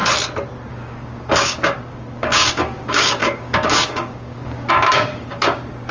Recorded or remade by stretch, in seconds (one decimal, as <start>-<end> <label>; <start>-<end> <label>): 0.0-0.7 recorded; 0.7-5.9 remade